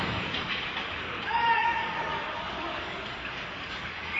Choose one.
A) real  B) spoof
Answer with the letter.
B